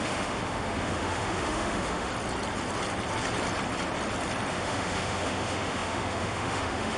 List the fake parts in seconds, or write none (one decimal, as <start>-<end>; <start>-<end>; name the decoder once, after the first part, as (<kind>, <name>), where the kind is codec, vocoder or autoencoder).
0.0-2.1 (autoencoder, DAC-VAE); 4.5-7.0